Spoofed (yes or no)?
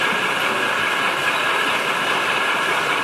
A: no